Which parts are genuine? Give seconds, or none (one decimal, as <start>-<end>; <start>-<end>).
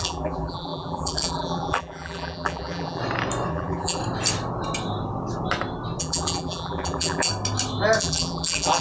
3.0-3.5; 4.0-6.0; 7.3-8.0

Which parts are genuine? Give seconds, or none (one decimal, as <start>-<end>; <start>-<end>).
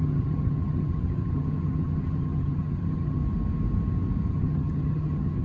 3.2-4.3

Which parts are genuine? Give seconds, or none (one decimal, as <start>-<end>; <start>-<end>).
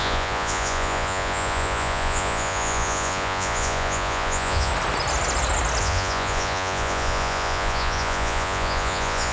4.7-5.8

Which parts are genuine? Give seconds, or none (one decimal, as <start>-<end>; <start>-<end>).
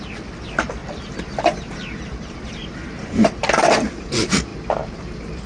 0.0-0.8; 2.4-4.5; 5.0-5.5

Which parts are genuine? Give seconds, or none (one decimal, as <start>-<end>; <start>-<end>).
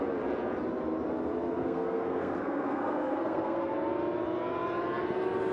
0.0-1.6; 3.7-5.5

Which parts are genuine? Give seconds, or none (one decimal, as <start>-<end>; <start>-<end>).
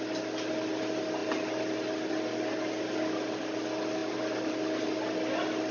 0.0-5.7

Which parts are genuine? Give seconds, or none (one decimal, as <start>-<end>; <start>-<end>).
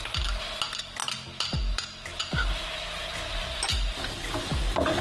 0.0-5.0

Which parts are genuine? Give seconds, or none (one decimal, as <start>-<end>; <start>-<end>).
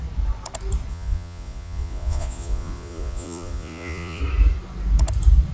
0.0-0.9; 4.2-5.5